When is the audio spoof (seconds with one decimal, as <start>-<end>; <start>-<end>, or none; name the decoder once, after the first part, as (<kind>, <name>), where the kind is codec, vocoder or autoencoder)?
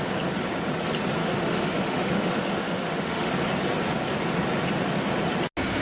1.2-3.3 (autoencoder, DAC-VAE)